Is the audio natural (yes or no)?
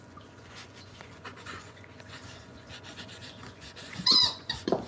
no